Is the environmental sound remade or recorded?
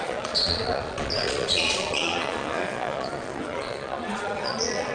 remade